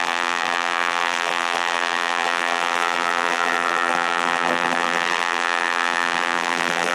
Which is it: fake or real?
fake